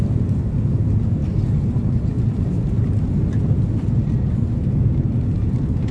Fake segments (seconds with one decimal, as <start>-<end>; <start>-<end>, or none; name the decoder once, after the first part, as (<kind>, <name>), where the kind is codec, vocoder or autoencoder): none